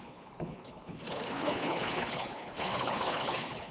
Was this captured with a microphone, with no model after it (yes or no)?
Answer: no